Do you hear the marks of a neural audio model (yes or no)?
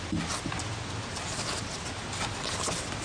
no